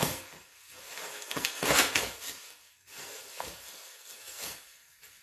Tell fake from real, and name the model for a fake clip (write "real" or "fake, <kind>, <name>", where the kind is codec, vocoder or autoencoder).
fake, codec, SNAC